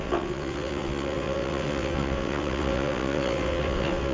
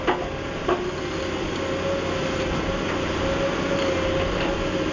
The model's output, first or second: first